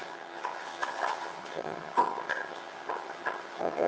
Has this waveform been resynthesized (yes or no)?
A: yes